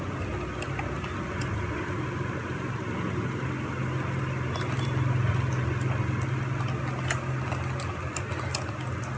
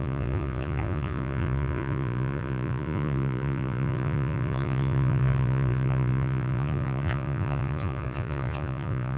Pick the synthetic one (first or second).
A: second